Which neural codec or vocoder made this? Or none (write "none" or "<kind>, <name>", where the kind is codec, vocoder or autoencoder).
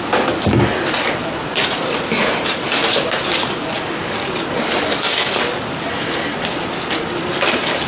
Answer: none